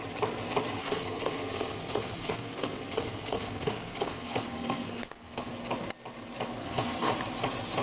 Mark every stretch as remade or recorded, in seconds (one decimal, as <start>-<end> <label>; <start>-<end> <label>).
0.0-0.8 recorded; 0.8-5.5 remade; 5.5-6.6 recorded; 6.6-7.1 remade; 7.1-7.8 recorded